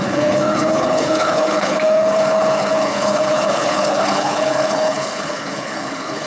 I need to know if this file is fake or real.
fake